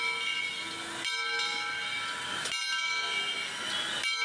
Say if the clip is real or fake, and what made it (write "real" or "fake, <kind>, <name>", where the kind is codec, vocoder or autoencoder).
real